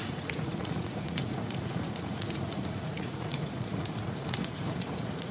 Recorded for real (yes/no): no